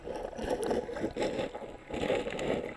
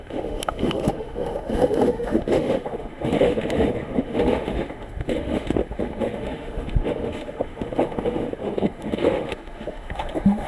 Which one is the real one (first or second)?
first